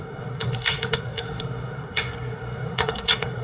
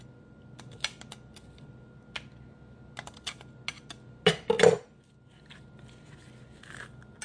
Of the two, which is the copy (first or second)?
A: first